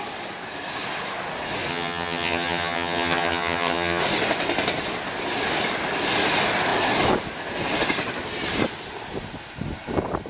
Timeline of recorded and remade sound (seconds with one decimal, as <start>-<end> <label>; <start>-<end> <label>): 0.0-1.7 recorded; 1.7-4.0 remade; 4.0-10.3 recorded